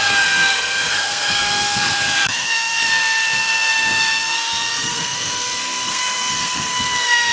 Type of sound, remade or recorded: remade